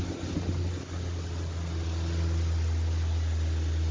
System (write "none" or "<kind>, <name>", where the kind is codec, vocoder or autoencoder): none